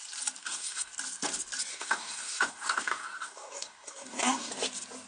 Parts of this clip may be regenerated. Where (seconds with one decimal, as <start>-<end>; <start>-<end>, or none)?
0.4-0.9; 1.7-4.5